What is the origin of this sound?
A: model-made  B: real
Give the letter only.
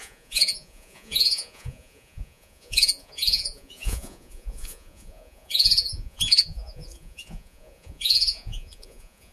A